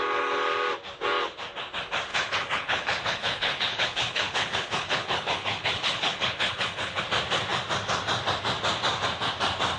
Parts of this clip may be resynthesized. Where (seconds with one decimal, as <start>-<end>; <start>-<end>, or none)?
2.1-7.0